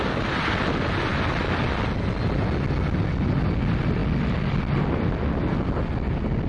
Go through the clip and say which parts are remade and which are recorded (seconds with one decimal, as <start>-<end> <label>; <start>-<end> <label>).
0.0-6.5 recorded